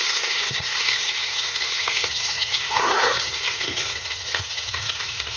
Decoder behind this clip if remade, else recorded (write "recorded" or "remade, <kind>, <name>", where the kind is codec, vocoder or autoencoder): remade, codec, SNAC